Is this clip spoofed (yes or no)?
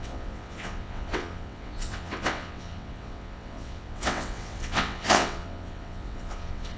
yes